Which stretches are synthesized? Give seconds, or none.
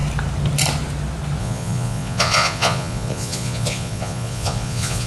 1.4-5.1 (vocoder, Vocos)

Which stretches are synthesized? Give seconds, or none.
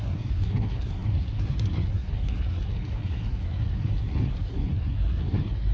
0.0-5.7 (codec, SNAC)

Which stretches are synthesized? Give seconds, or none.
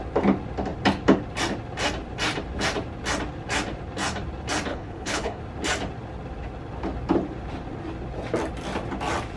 4.7-5.4 (codec, HILCodec)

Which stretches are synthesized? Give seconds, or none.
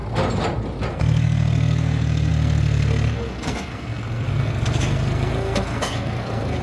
0.9-6.6 (codec, SNAC)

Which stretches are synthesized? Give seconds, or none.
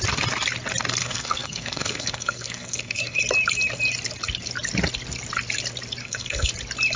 1.0-3.2 (codec, SNAC); 6.0-6.5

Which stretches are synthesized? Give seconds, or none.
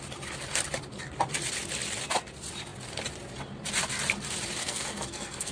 4.6-5.5 (codec, SNAC)